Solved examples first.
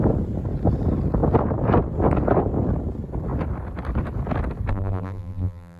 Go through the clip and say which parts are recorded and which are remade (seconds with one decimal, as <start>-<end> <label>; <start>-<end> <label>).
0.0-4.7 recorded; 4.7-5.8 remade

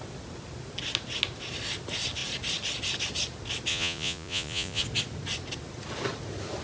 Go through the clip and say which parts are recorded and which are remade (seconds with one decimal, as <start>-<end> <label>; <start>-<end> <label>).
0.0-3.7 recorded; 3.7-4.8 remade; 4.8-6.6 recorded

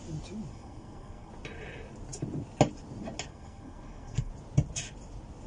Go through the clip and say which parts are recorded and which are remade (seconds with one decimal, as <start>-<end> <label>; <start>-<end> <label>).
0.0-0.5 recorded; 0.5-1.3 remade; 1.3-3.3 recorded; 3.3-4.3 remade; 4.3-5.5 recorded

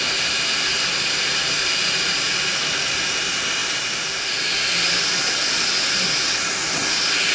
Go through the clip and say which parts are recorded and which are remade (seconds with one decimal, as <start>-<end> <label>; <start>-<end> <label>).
0.0-7.3 recorded